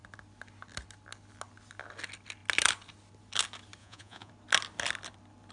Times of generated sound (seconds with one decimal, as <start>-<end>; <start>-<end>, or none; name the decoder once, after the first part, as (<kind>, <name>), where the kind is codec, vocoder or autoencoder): 3.8-4.3 (vocoder, Vocos)